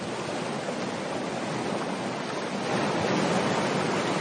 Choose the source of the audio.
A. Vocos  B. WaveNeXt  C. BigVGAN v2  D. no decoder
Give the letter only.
D